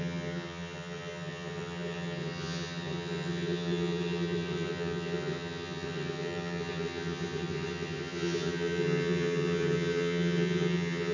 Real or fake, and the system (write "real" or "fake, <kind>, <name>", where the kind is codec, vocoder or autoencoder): fake, vocoder, HiFi-GAN